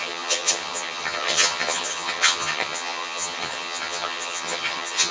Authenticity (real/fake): fake